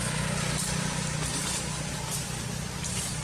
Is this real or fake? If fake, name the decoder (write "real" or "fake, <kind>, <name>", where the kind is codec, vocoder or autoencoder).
real